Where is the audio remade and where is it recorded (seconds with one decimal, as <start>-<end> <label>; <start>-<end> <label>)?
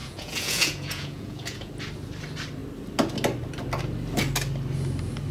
0.0-1.7 remade; 1.7-5.3 recorded